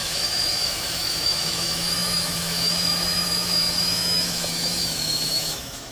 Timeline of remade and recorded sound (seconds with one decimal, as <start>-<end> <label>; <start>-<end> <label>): 0.0-5.9 remade